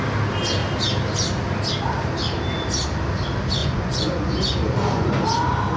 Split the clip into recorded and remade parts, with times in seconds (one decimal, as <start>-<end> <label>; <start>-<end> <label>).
0.0-3.6 recorded; 3.6-5.1 remade; 5.1-5.8 recorded

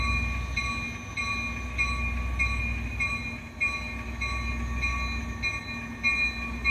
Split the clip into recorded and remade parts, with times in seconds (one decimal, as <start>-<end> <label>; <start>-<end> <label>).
0.0-6.7 recorded

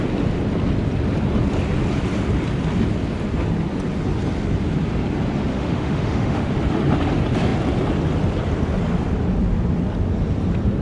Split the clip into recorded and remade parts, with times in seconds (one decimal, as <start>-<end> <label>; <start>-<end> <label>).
0.0-5.5 recorded; 5.5-6.5 remade; 6.5-10.8 recorded